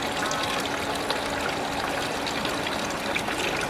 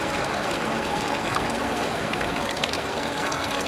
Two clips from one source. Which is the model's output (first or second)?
second